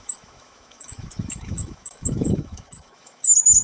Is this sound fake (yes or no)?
yes